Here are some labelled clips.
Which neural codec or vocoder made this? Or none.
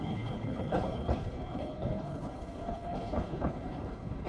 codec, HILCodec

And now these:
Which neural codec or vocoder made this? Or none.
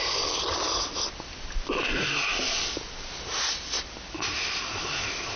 none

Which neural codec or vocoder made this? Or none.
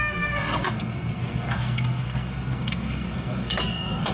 codec, SNAC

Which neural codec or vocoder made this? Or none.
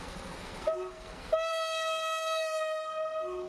codec, SNAC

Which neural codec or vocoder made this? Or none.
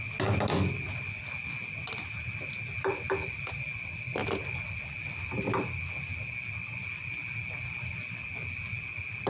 none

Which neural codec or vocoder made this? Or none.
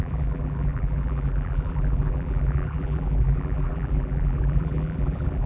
vocoder, BigVGAN v2